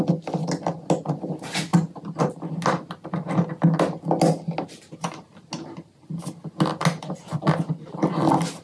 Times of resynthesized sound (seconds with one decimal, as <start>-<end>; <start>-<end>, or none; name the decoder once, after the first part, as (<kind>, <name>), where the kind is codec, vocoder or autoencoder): none